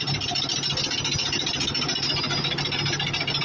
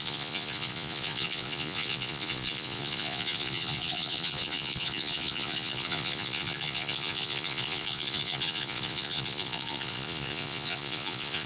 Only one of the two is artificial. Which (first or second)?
second